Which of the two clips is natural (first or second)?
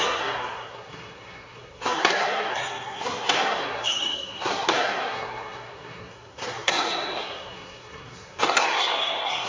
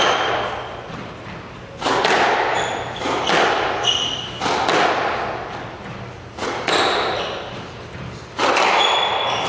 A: second